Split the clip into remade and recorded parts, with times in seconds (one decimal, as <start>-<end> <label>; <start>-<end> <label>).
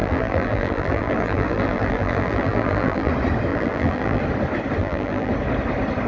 0.0-3.1 remade; 3.1-3.5 recorded; 3.5-4.2 remade; 4.2-4.8 recorded; 4.8-5.3 remade; 5.3-6.1 recorded